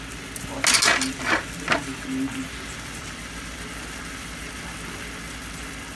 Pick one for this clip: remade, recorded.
recorded